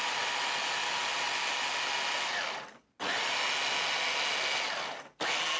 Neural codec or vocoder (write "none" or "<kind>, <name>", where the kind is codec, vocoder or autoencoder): none